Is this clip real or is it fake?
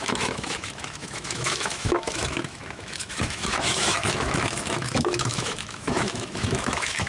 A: fake